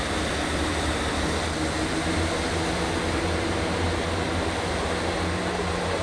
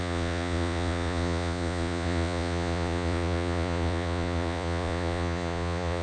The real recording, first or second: first